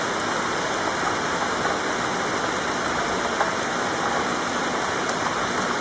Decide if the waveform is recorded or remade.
recorded